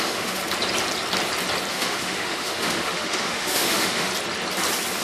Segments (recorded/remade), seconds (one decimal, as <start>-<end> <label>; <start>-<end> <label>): 0.0-0.4 remade; 0.4-1.7 recorded; 1.7-4.1 remade; 4.1-5.0 recorded